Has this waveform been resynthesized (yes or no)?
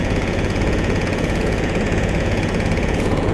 yes